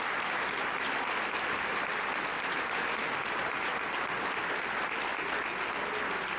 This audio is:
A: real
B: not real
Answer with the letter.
A